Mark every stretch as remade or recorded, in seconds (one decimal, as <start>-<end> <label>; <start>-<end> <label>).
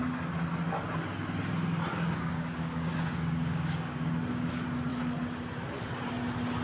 0.0-1.9 recorded; 1.9-4.5 remade; 4.5-6.6 recorded